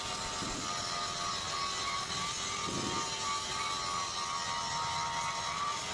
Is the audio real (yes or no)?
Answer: yes